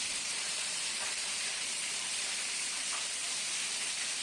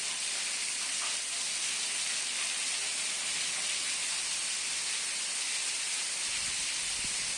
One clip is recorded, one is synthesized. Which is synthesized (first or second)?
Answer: first